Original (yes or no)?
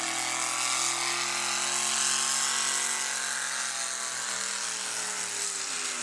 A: yes